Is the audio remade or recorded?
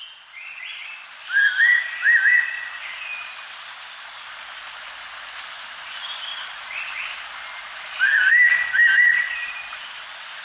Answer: recorded